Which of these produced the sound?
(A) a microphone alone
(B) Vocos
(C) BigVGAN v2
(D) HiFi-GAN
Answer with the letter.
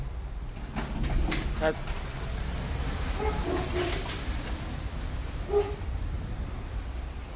A